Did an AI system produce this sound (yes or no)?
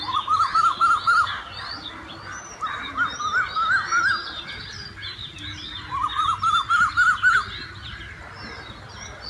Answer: no